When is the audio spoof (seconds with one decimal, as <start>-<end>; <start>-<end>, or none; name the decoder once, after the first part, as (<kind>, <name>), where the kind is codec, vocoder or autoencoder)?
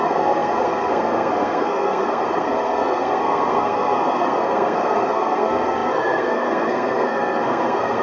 0.0-8.0 (codec, SNAC)